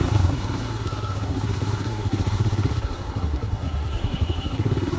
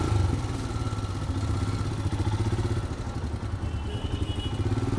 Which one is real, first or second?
second